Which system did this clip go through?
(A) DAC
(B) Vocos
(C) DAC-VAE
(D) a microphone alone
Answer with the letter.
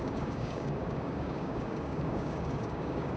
A